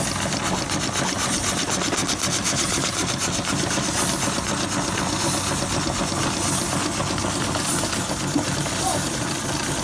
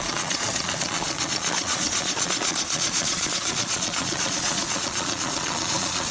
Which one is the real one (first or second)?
first